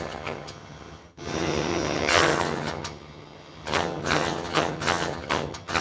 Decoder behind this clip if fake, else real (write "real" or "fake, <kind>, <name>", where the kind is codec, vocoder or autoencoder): fake, vocoder, HiFi-GAN